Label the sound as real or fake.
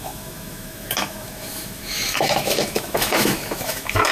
fake